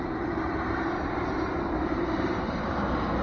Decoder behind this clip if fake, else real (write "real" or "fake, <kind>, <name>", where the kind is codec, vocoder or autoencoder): fake, vocoder, BigVGAN v2